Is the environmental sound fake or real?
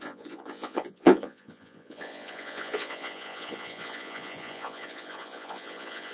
fake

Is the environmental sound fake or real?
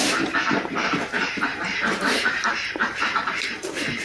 fake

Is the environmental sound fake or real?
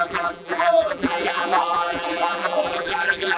fake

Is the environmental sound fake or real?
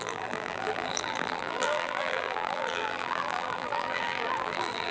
fake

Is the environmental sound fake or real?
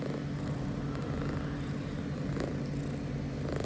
real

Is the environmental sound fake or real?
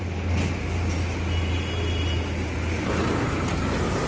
real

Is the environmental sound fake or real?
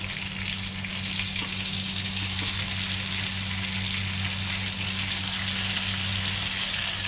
real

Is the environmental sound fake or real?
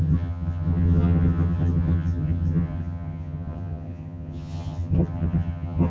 fake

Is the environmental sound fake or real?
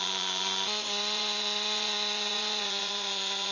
fake